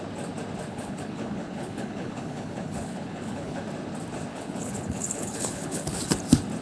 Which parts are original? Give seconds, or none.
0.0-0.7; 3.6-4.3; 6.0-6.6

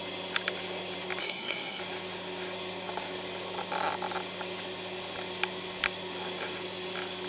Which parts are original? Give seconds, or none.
0.0-1.2; 1.8-7.3

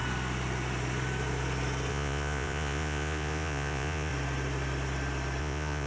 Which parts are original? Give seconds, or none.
0.0-1.9; 4.1-5.4

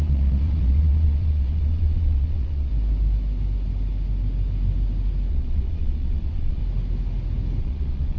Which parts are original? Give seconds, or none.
2.7-5.3; 6.6-7.6